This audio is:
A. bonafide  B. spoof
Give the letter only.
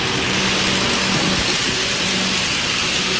A